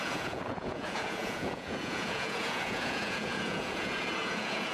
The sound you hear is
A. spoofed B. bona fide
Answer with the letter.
A